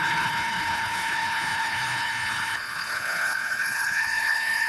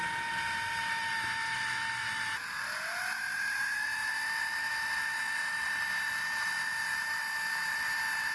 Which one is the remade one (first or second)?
first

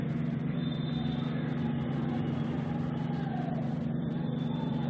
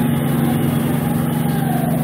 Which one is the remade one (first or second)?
first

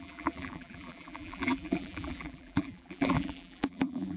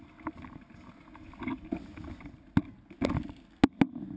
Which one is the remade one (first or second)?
first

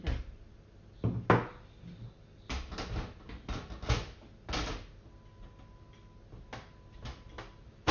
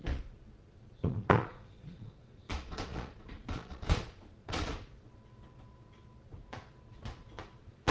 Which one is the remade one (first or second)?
second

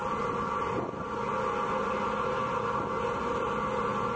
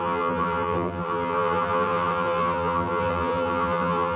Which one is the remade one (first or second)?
second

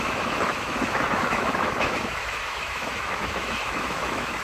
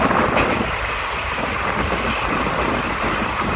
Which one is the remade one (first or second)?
first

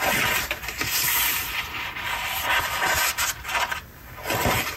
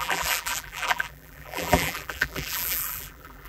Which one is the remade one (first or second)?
second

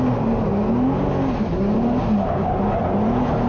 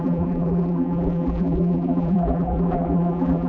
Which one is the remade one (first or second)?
second